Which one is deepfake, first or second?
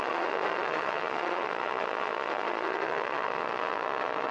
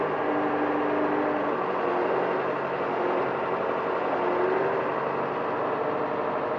first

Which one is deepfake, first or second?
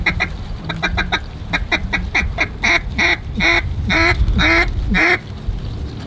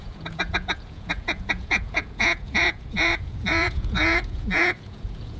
second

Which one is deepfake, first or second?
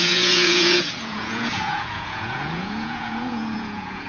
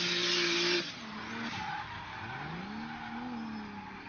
first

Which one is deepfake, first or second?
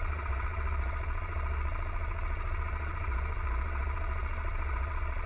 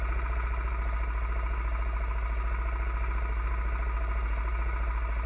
first